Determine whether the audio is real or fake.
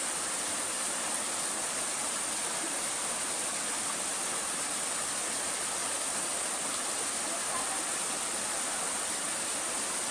real